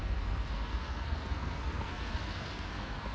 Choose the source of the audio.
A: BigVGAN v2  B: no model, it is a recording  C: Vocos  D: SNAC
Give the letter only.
D